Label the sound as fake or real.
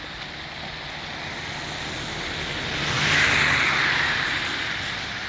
real